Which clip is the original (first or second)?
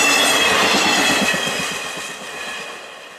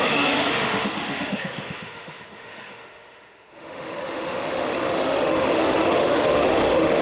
first